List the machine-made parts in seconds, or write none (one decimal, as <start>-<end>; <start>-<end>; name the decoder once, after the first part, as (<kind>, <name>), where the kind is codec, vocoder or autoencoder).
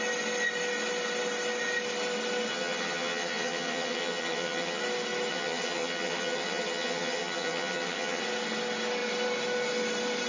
2.5-4.8 (vocoder, HiFi-GAN); 5.3-8.2